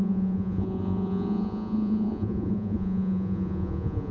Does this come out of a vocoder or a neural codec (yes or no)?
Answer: yes